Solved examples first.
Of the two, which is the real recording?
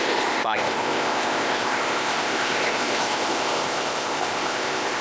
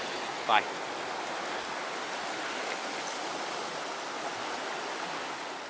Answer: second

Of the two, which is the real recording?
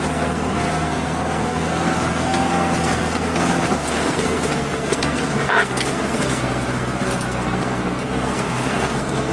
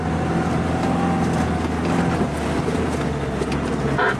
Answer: second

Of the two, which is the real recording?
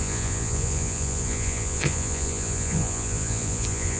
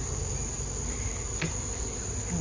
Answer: second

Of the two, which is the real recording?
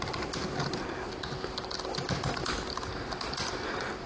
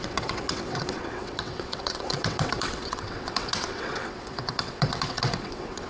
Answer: first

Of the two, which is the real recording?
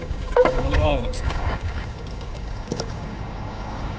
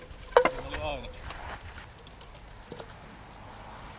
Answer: second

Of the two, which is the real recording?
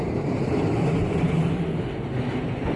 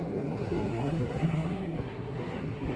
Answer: first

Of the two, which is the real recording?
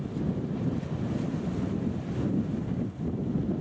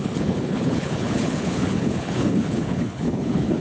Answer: first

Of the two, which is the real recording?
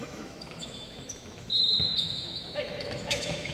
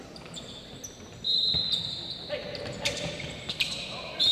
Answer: second